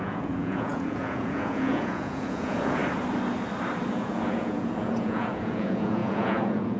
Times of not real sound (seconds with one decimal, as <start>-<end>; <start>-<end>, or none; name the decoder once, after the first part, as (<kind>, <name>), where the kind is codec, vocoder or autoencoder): 0.0-2.8 (vocoder, Vocos); 3.9-6.8